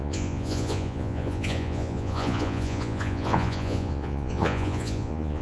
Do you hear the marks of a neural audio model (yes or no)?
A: yes